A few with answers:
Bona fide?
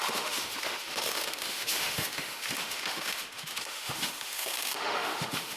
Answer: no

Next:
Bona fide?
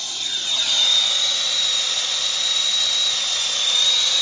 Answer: yes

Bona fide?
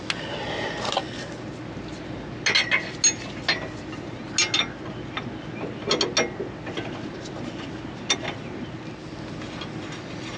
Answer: yes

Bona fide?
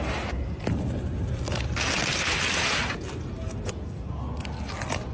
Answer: yes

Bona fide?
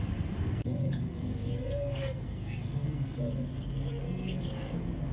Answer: no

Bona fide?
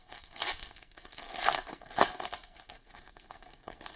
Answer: no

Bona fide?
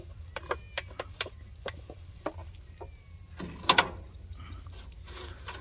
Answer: yes